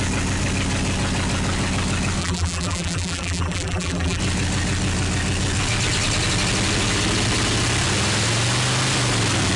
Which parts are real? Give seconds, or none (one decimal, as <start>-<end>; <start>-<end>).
0.0-2.2; 4.2-9.6